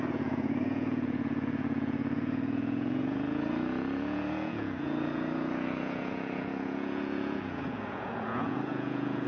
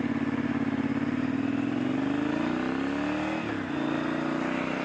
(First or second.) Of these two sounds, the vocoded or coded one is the first